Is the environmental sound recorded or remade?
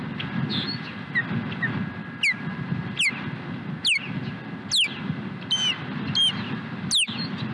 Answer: recorded